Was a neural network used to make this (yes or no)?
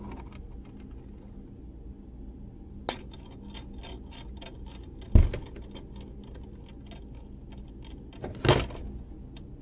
no